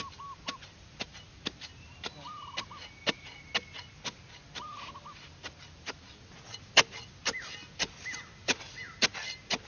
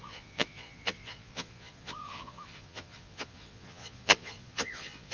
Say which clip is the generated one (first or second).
second